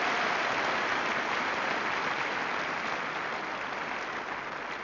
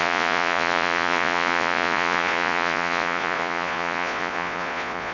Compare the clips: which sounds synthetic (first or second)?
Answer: second